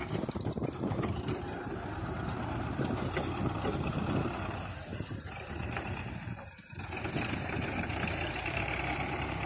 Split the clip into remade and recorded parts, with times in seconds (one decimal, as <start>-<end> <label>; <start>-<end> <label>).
0.0-9.5 remade